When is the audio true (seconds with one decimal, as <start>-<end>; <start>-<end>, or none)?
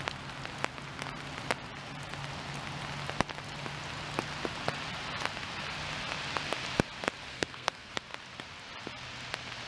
0.0-7.3; 7.9-9.7